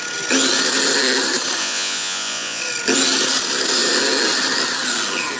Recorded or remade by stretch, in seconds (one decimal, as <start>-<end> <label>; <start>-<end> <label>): 0.0-1.6 recorded; 1.6-2.6 remade; 2.6-5.4 recorded